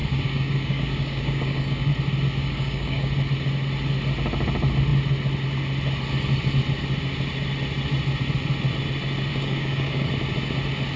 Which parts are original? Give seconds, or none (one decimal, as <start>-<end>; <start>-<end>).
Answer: 1.9-2.4; 3.1-9.3; 10.1-11.0